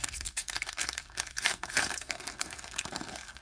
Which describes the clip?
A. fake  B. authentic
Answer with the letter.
A